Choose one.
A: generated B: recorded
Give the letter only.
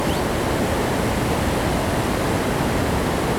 B